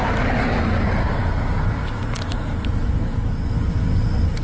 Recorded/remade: recorded